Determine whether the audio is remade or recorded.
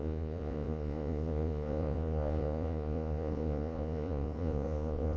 remade